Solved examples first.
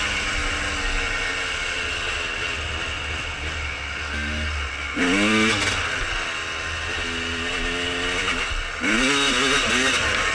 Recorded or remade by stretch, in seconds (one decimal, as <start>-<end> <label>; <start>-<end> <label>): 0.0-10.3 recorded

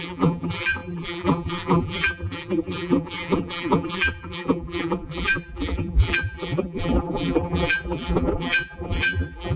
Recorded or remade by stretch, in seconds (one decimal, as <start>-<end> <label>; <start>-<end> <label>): 0.0-9.6 remade

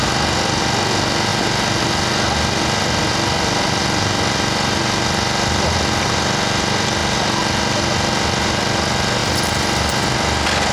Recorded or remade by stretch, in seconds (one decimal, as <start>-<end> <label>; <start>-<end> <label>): 0.0-10.7 recorded

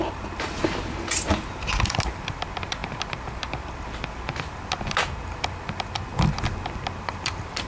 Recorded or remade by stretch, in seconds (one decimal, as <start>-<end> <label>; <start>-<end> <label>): 0.0-0.6 remade; 0.6-2.0 recorded; 2.0-6.1 remade; 6.1-6.6 recorded; 6.6-7.7 remade

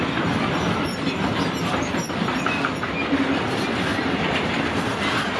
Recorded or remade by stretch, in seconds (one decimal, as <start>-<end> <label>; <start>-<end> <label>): 0.0-3.9 recorded; 3.9-4.5 remade; 4.5-5.4 recorded